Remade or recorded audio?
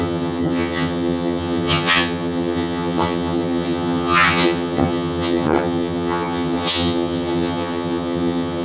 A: remade